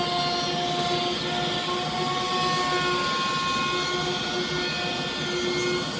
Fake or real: real